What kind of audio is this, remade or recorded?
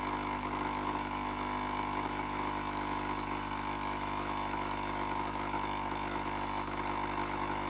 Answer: remade